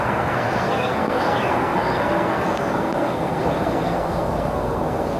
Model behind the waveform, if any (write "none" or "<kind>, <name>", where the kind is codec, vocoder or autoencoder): codec, SNAC